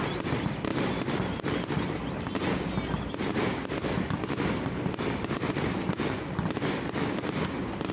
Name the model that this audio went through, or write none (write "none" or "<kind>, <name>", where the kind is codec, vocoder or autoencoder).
none